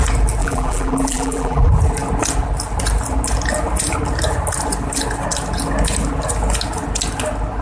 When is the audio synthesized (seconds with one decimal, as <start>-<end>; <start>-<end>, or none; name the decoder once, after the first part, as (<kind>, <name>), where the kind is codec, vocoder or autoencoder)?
0.4-1.7 (vocoder, BigVGAN v2)